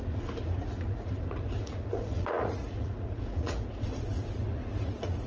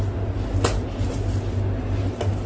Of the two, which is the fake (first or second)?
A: first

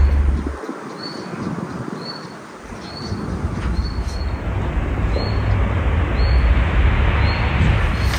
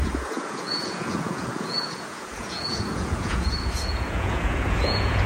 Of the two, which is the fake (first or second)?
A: second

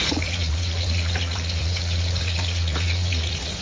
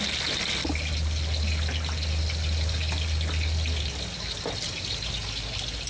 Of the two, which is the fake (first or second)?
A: first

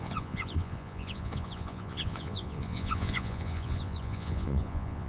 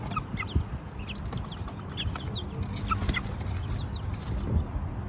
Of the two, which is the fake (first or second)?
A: first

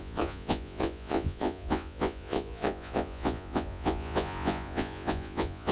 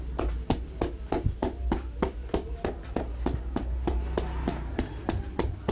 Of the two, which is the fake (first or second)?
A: first